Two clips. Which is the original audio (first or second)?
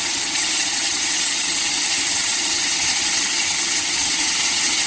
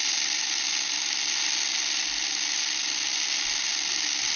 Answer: second